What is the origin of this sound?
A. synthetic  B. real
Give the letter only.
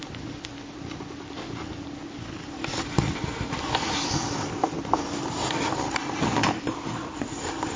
B